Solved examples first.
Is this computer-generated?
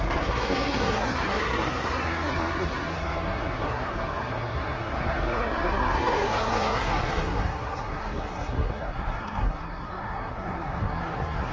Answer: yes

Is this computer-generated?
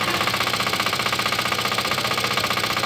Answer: yes